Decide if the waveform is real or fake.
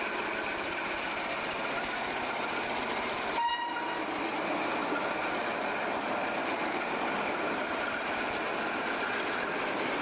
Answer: real